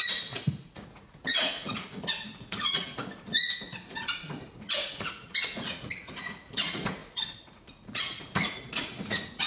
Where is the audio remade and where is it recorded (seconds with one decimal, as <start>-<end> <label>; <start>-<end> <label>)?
0.0-9.5 remade